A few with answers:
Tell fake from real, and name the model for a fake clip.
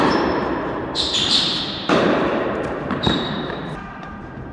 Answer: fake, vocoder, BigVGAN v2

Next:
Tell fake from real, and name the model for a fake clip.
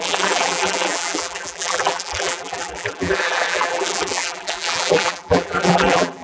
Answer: fake, vocoder, BigVGAN v2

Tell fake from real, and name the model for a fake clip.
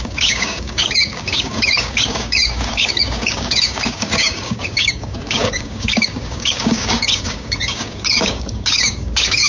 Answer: fake, codec, DAC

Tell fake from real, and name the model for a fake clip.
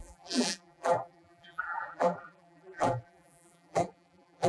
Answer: fake, vocoder, BigVGAN v2